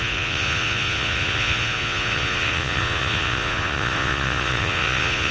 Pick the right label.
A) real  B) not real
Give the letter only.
B